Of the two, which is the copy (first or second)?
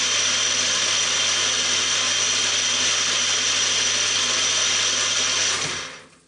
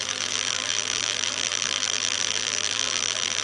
second